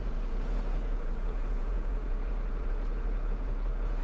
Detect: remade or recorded remade